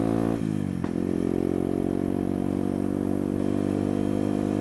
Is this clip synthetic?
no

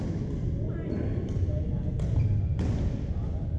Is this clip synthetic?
no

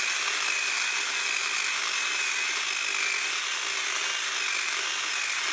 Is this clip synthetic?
no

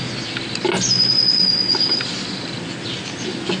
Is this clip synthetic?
no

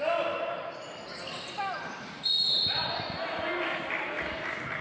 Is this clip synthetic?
no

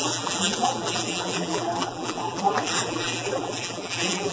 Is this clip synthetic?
yes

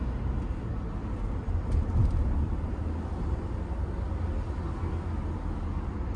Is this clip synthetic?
no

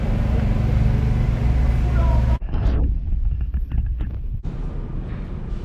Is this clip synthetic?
no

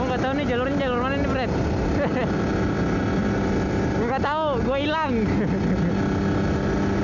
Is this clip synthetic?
no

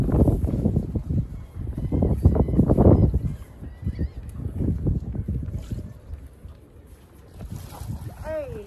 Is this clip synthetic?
no